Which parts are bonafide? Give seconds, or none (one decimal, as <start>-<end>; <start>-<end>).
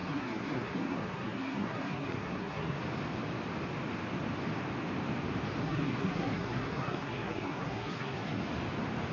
2.8-5.6; 8.4-9.1